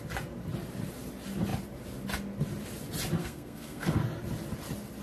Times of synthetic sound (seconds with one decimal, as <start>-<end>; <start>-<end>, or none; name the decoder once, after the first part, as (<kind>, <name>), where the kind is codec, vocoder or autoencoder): 3.2-4.0 (codec, SNAC)